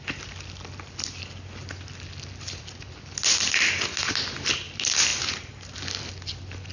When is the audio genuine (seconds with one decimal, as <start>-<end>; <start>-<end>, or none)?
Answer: 0.0-6.7